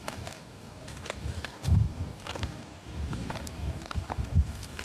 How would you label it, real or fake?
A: fake